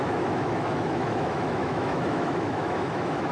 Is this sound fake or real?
fake